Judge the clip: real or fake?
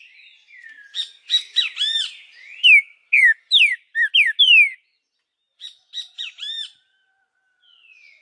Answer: real